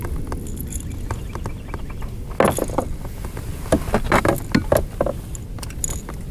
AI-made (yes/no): no